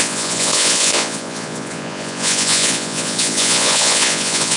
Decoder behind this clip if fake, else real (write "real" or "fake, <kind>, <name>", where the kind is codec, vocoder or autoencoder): fake, vocoder, Vocos